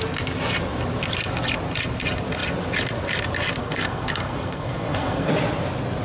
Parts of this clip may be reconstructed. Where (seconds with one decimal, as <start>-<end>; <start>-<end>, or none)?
3.6-5.3